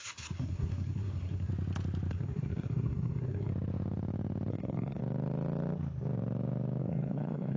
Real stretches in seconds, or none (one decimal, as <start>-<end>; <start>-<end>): 1.5-2.1; 3.5-4.5; 5.0-6.8